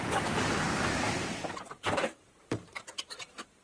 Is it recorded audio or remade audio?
remade